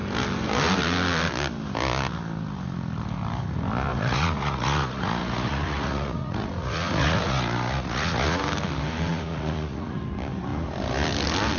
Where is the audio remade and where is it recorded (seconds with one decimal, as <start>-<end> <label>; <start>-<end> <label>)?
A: 0.0-3.9 recorded; 3.9-8.4 remade; 8.4-9.1 recorded; 9.1-10.0 remade; 10.0-11.6 recorded